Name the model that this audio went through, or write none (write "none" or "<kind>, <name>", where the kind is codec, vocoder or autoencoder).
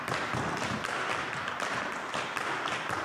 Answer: none